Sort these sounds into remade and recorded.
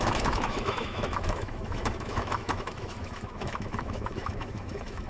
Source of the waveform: remade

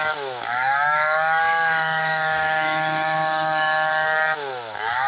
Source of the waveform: remade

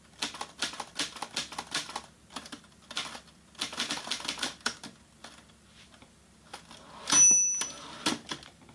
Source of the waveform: recorded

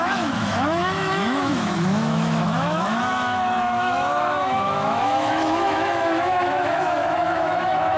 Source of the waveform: remade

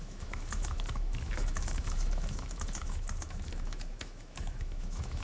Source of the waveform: remade